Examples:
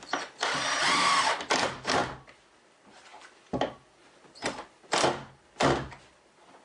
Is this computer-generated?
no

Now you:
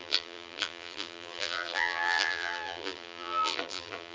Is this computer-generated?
yes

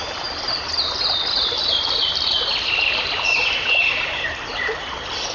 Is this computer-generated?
yes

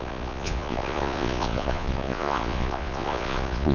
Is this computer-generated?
yes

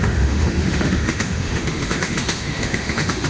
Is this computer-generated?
yes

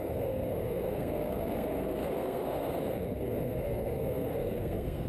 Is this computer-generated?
yes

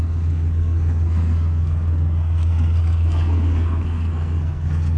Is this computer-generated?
yes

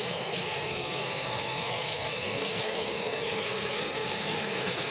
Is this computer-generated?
yes